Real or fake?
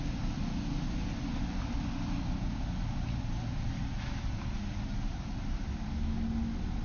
real